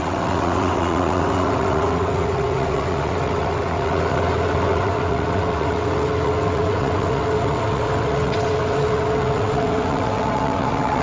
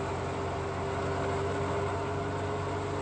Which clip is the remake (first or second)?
first